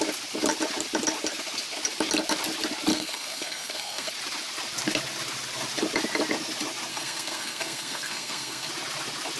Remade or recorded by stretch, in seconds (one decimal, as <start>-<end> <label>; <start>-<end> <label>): 0.0-2.9 recorded; 2.9-4.1 remade; 4.1-6.9 recorded; 6.9-8.7 remade; 8.7-9.4 recorded

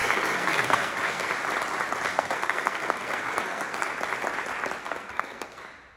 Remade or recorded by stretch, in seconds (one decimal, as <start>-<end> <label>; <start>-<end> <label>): 0.0-1.3 remade; 1.3-2.1 recorded; 2.1-3.9 remade; 3.9-4.8 recorded; 4.8-5.6 remade; 5.6-6.0 recorded